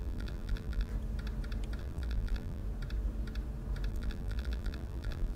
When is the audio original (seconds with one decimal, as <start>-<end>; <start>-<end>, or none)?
0.9-1.8; 2.6-3.9